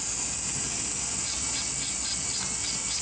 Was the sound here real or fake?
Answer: real